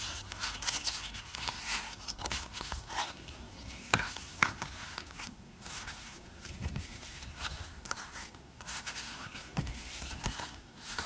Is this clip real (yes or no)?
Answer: no